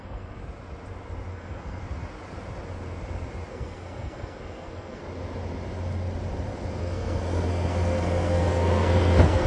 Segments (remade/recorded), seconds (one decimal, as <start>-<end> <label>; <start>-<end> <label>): 0.0-0.4 remade; 0.4-1.3 recorded; 1.3-1.8 remade; 1.8-3.5 recorded; 3.5-5.0 remade; 5.0-6.8 recorded; 6.8-9.5 remade